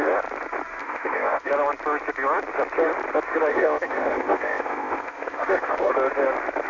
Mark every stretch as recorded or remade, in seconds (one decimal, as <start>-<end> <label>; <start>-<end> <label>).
0.0-0.8 recorded; 0.8-1.5 remade; 1.5-3.5 recorded; 3.5-5.9 remade; 5.9-6.7 recorded